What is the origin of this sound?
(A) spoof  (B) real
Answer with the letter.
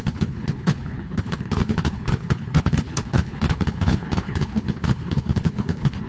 A